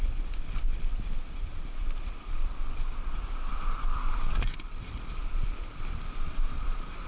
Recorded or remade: remade